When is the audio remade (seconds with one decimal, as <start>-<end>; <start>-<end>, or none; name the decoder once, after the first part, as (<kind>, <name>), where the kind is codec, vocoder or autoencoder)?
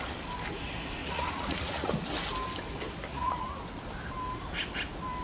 1.0-1.9 (vocoder, Vocos); 3.1-3.6